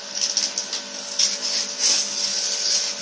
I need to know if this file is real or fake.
real